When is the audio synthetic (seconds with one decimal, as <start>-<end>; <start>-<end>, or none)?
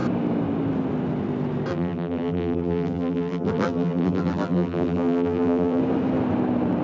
1.7-5.8